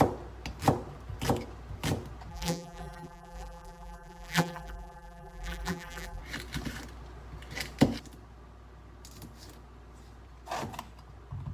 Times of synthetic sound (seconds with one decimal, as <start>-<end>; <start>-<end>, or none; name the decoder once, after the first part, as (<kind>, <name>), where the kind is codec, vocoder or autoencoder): 2.3-6.2 (vocoder, BigVGAN v2)